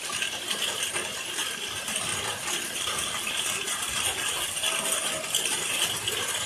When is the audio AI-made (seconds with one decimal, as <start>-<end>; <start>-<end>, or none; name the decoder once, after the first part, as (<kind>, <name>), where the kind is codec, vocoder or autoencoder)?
none